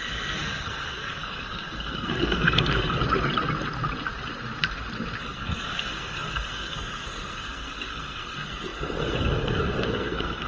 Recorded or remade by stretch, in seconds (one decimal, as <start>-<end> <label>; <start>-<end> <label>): 0.0-3.0 remade; 3.0-5.2 recorded; 5.2-10.5 remade